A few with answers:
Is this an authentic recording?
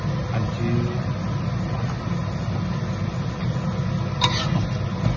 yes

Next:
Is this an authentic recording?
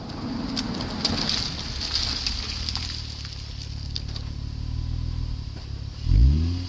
yes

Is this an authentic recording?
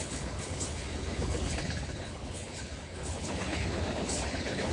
no